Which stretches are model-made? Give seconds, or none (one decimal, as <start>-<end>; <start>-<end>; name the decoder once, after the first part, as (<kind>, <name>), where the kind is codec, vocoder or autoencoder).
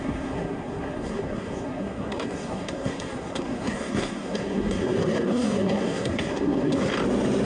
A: 0.0-6.9 (codec, SNAC)